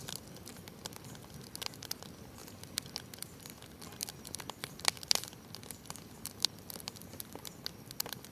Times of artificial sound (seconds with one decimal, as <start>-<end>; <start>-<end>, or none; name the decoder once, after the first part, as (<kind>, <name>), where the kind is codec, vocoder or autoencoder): 0.0-0.5 (vocoder, BigVGAN v2); 1.1-8.3